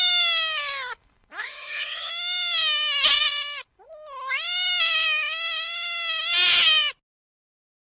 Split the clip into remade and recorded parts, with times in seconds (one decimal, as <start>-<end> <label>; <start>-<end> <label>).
0.0-1.4 recorded; 1.4-2.1 remade; 2.1-8.0 recorded